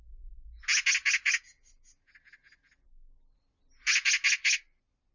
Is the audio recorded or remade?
recorded